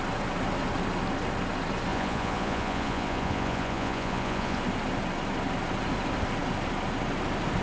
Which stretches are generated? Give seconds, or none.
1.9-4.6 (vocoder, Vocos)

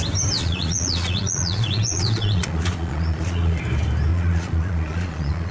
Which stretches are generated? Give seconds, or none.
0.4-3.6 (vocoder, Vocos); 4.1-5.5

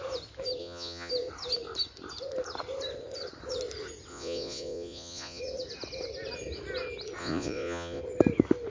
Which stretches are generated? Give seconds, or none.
0.6-1.1 (vocoder, Vocos); 4.1-5.4; 7.2-8.0